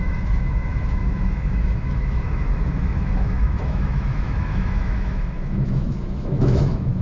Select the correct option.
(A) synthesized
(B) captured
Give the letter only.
A